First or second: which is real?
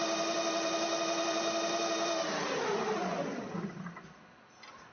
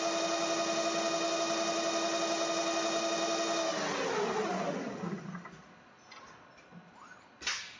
second